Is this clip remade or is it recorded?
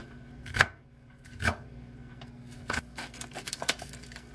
remade